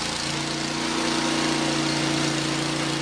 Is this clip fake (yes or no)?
no